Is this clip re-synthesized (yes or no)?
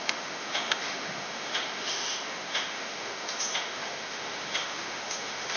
yes